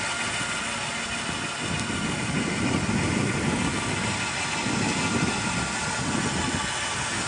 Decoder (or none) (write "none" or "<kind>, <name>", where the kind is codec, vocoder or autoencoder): none